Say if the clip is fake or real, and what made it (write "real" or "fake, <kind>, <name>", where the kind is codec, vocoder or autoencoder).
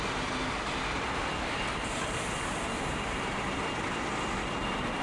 fake, vocoder, BigVGAN v2